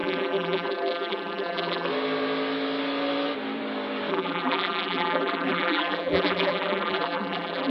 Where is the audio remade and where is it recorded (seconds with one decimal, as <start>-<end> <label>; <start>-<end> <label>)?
0.0-1.9 remade; 1.9-4.1 recorded; 4.1-7.7 remade